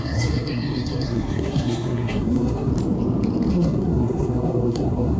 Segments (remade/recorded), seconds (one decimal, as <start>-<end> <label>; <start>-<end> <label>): 0.0-2.7 remade; 2.7-3.5 recorded; 3.5-5.2 remade